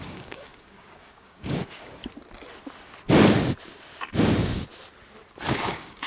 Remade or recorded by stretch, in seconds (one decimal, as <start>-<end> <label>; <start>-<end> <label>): 0.0-2.0 remade; 2.0-5.5 recorded; 5.5-6.1 remade